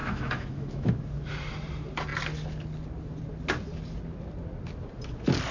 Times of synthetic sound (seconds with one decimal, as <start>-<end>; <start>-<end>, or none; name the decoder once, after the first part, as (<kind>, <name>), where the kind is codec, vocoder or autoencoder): 0.0-0.9 (autoencoder, DAC-VAE)